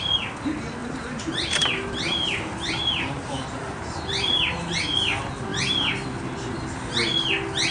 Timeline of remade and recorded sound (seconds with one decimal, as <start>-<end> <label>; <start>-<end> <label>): 0.0-0.8 recorded; 0.8-4.5 remade; 4.5-5.5 recorded; 5.5-6.2 remade; 6.2-7.7 recorded